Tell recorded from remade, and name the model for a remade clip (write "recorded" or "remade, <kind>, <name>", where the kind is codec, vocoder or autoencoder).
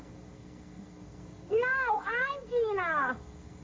remade, codec, SNAC